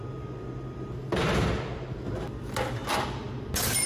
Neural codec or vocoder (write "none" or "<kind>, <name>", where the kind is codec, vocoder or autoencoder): none